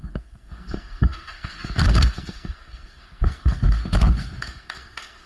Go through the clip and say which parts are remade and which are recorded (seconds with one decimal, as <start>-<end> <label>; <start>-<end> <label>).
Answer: 0.0-5.3 remade